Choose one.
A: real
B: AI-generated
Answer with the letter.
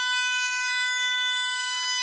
B